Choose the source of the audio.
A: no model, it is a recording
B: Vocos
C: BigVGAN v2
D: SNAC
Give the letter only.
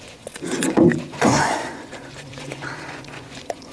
B